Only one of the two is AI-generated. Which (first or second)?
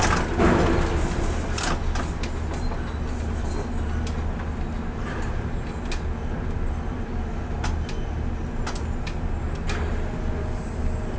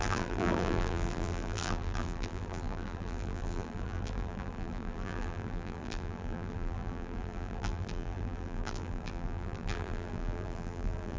second